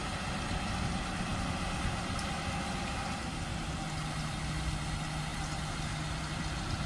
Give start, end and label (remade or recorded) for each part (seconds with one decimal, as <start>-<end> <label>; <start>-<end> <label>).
0.0-6.9 recorded

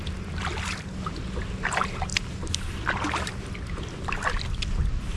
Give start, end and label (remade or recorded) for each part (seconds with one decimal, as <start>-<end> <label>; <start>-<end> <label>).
0.0-5.2 recorded